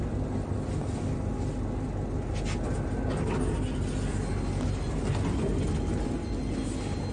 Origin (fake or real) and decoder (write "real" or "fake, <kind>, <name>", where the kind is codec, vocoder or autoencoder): real